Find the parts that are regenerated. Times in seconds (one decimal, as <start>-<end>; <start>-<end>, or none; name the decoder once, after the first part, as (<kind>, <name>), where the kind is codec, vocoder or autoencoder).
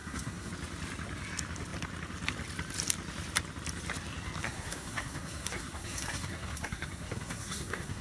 0.0-0.5 (codec, SNAC); 4.4-8.0